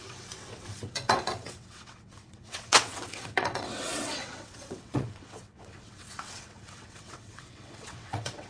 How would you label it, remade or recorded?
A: remade